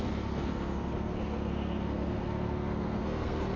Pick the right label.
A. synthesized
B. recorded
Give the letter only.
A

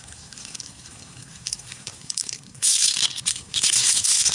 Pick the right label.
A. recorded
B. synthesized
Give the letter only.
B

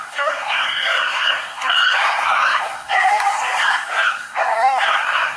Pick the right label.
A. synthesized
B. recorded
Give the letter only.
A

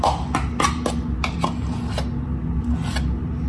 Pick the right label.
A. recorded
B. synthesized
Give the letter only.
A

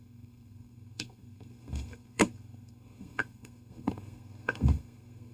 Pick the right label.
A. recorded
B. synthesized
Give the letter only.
B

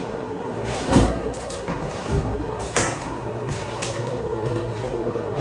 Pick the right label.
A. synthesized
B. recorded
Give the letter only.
A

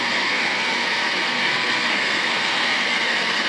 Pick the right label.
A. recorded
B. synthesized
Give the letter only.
B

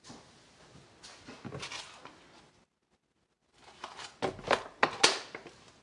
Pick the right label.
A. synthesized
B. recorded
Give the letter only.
B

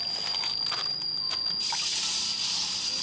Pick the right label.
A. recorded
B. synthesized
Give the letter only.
A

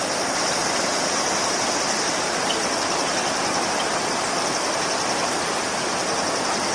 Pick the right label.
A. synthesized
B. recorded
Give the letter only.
B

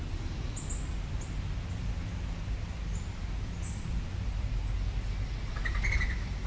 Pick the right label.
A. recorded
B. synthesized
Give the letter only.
A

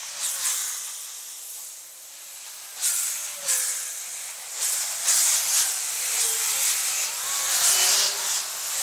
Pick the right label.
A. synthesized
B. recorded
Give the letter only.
B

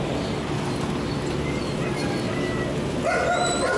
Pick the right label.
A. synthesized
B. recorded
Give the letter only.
B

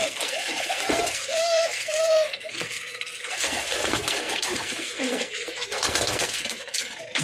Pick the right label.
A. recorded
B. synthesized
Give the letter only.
B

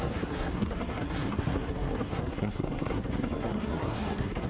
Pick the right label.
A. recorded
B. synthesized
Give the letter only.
B